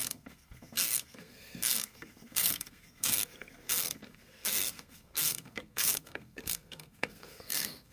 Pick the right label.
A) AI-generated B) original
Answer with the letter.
A